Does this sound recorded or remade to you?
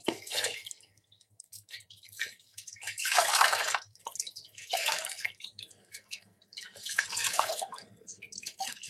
remade